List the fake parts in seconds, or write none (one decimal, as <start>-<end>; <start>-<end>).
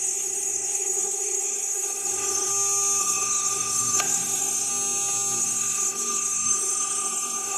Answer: 0.0-2.5; 3.0-4.7; 5.4-7.6